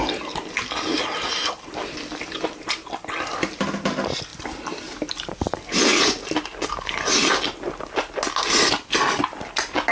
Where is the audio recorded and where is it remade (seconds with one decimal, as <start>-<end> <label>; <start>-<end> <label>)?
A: 0.0-9.9 recorded